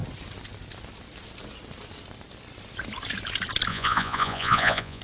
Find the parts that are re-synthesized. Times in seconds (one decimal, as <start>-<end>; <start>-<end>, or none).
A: 3.7-5.0